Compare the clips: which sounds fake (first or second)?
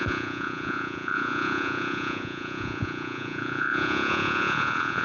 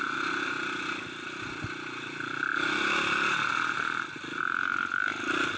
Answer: first